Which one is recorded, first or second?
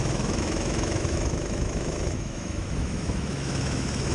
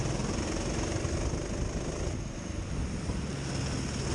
second